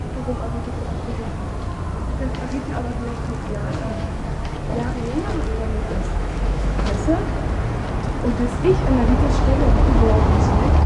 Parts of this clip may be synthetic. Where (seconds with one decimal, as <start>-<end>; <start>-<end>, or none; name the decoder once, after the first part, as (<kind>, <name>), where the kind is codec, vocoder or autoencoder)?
3.6-4.2 (autoencoder, DAC-VAE); 5.7-6.9

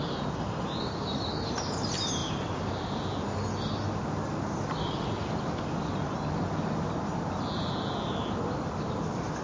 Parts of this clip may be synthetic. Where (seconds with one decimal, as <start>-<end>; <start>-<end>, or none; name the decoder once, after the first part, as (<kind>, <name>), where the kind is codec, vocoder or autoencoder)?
none

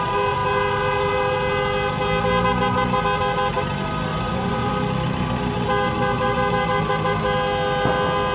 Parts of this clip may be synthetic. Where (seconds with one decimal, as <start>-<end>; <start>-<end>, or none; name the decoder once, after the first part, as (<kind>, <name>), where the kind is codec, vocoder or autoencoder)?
4.1-4.7 (vocoder, Vocos)

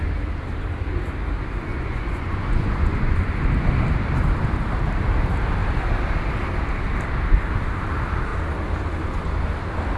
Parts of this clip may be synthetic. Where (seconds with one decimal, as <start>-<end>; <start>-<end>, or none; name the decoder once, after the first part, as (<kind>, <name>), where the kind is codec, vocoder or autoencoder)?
1.7-3.4 (vocoder, Vocos)

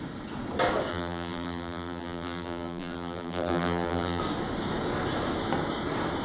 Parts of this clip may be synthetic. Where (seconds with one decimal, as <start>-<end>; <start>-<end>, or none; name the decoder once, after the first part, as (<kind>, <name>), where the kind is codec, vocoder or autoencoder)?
0.9-4.2 (vocoder, BigVGAN v2)

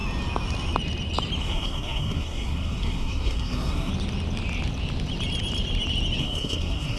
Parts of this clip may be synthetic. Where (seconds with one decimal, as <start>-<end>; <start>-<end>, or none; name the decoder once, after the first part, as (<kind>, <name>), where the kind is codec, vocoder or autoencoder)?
1.4-3.9 (codec, SNAC); 6.2-7.0

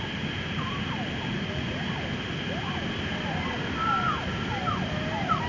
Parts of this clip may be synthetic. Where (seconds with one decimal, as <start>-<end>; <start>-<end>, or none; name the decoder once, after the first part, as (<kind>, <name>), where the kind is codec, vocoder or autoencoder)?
1.3-1.9 (vocoder, Vocos)

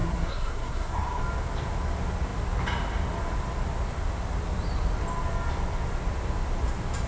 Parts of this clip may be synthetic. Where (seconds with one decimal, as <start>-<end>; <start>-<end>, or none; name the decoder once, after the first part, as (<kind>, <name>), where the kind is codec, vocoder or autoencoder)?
0.0-1.2 (codec, SNAC)